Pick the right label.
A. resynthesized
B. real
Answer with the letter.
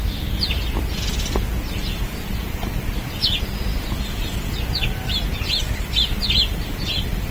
B